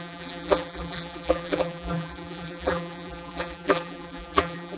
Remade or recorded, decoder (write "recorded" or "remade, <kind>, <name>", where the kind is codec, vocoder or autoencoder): remade, vocoder, BigVGAN v2